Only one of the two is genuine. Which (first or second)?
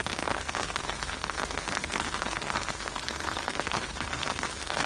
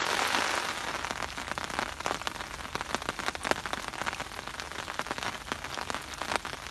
second